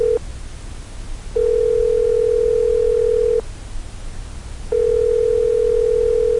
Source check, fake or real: real